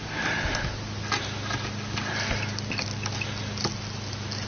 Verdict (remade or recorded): recorded